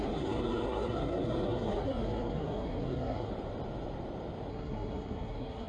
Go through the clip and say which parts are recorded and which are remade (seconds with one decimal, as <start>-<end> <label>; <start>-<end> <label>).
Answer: 0.0-3.3 remade; 3.3-4.5 recorded; 4.5-5.7 remade